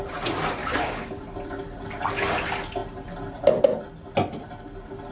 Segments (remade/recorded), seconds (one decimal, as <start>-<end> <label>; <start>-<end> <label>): 0.0-0.6 recorded; 0.6-1.2 remade; 1.2-5.1 recorded